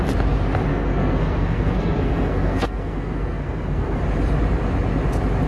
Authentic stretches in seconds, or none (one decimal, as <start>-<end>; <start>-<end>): 0.0-0.7; 4.0-5.5